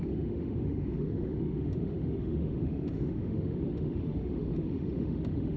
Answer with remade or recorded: remade